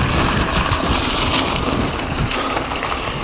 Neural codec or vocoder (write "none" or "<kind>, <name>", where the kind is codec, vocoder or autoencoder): none